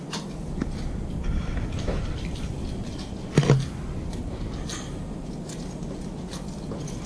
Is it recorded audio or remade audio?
recorded